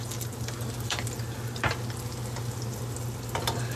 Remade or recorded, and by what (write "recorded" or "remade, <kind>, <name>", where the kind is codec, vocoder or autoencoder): recorded